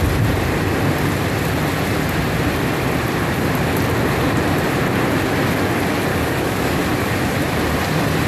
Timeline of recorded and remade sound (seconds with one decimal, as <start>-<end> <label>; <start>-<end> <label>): 0.0-6.1 recorded; 6.1-6.8 remade; 6.8-8.3 recorded